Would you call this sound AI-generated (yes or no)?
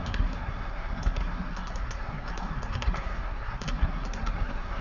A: yes